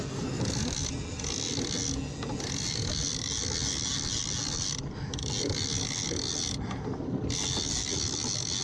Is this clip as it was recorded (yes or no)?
yes